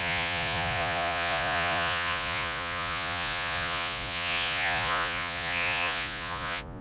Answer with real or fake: fake